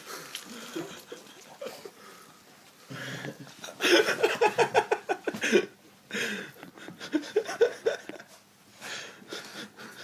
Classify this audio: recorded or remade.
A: recorded